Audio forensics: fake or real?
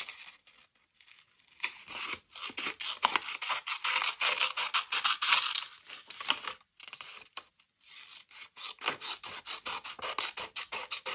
real